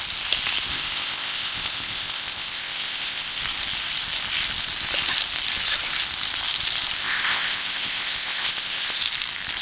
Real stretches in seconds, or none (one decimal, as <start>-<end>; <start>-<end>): 0.0-0.7; 3.4-7.0; 9.0-9.6

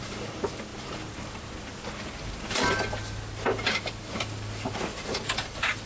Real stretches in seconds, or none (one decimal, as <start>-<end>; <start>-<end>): 0.0-4.9

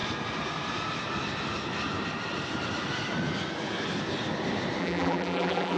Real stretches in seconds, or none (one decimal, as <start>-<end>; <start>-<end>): 0.0-4.8